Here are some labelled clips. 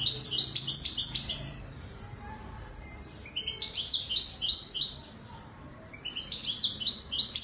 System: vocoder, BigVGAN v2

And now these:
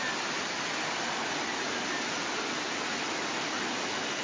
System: none